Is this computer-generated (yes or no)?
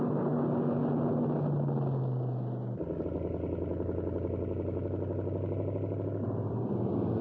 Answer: no